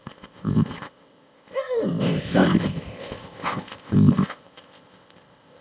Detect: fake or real fake